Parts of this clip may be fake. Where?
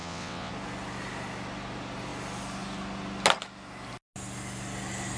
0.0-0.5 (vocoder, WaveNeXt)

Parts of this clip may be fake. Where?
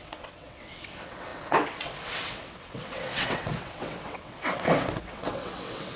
0.0-6.0 (vocoder, WaveNeXt)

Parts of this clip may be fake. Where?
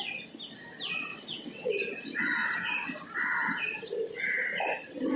1.1-1.7 (vocoder, WaveNeXt)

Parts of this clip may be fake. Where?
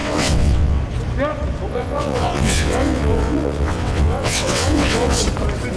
0.0-0.8 (vocoder, WaveNeXt); 1.7-5.2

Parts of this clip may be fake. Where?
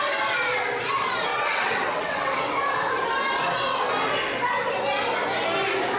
1.3-2.4 (vocoder, WaveNeXt)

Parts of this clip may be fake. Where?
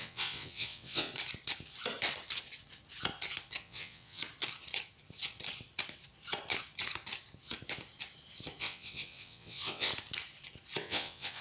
0.0-1.1 (vocoder, WaveNeXt); 3.6-4.2; 8.6-9.9; 10.8-11.4